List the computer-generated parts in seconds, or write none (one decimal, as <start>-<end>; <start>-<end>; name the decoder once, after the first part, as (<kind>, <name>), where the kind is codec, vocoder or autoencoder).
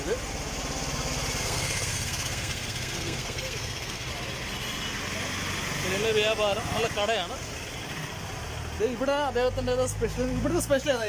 1.4-4.1 (codec, SNAC)